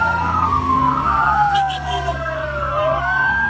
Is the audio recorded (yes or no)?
no